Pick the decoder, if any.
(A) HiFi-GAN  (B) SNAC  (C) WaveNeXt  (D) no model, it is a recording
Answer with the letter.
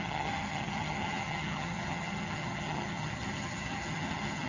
A